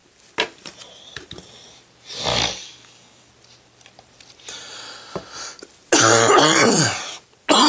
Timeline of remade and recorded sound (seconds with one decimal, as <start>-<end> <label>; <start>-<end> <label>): 0.0-2.3 recorded; 2.3-3.3 remade; 3.3-7.7 recorded